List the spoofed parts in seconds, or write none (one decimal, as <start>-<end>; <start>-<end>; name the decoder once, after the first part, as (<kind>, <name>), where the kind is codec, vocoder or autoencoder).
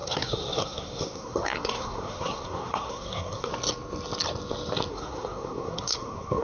0.0-3.5 (codec, SNAC); 4.9-6.4